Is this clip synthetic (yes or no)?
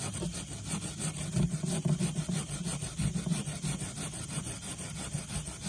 no